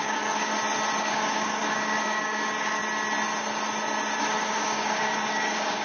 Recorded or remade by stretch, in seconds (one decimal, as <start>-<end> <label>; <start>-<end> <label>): 0.0-0.5 remade; 0.5-1.0 recorded; 1.0-2.8 remade; 2.8-4.2 recorded; 4.2-5.8 remade